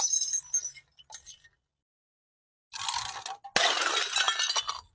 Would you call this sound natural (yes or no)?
yes